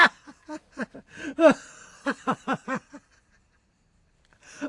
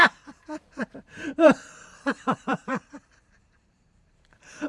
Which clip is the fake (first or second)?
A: second